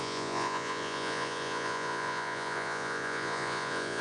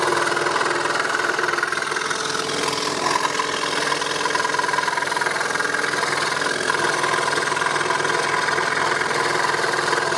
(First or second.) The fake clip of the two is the first